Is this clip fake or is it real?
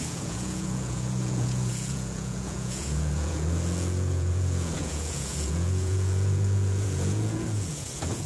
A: fake